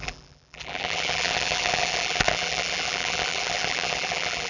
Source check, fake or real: fake